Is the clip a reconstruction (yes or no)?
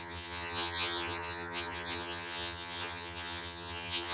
yes